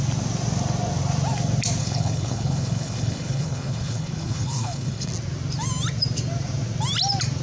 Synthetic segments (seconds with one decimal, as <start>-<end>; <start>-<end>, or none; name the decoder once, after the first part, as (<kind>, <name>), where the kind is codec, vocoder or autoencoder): 1.8-5.1 (codec, HILCodec)

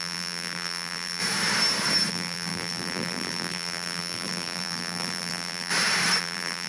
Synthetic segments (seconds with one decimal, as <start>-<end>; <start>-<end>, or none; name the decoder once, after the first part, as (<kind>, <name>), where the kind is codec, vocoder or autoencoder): 0.0-1.2 (vocoder, BigVGAN v2); 2.1-5.7; 6.2-6.7

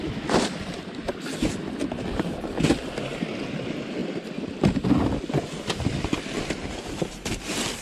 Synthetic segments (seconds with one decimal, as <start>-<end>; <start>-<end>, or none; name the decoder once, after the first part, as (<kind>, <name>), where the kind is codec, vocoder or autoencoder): 6.6-7.3 (vocoder, BigVGAN v2)